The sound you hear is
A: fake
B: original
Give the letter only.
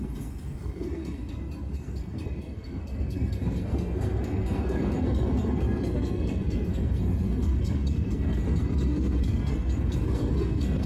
A